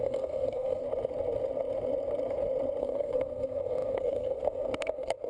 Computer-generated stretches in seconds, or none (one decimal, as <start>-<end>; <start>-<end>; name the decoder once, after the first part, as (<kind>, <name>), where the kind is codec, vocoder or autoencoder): 0.0-0.8 (codec, SNAC); 2.8-5.3